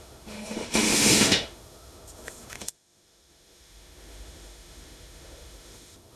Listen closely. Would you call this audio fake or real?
fake